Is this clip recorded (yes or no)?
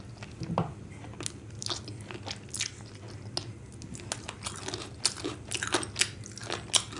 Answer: yes